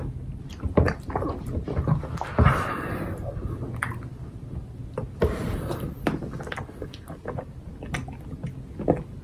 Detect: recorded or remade recorded